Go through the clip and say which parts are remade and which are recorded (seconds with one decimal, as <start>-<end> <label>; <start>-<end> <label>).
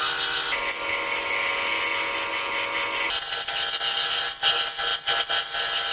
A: 0.0-5.9 recorded